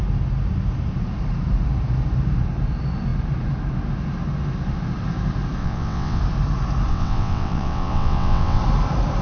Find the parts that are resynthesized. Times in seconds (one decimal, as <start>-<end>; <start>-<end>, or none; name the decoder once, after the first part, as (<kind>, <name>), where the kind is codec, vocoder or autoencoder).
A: 5.6-6.2 (vocoder, WaveNeXt); 6.9-8.6